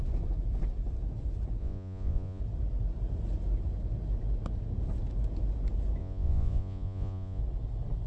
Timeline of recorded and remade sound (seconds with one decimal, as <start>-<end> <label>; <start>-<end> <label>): 0.0-1.6 recorded; 1.6-2.4 remade; 2.4-6.0 recorded; 6.0-7.4 remade; 7.4-8.1 recorded

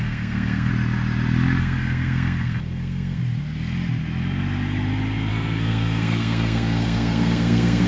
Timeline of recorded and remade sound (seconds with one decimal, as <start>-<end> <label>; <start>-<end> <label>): 0.0-0.7 remade; 0.7-1.6 recorded; 1.6-3.2 remade; 3.2-5.3 recorded; 5.3-7.9 remade

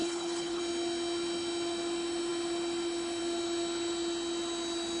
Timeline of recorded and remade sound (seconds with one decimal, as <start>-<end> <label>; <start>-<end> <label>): 0.0-0.6 remade; 0.6-5.0 recorded

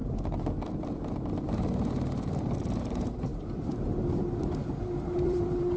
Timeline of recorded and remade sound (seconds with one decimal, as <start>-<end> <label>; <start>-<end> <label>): 0.0-2.8 recorded; 2.8-5.8 remade

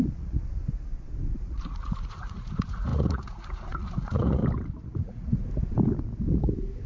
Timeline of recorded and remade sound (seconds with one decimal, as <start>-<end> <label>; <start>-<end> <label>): 0.0-0.9 remade; 0.9-1.4 recorded; 1.4-4.4 remade; 4.4-5.0 recorded; 5.0-5.4 remade; 5.4-6.9 recorded